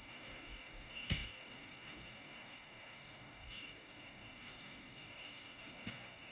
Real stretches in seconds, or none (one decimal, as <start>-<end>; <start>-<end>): none